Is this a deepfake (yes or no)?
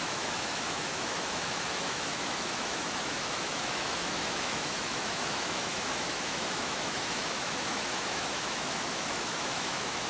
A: yes